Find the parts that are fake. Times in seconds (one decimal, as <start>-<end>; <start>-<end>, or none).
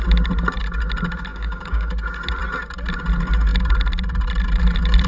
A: 1.3-1.9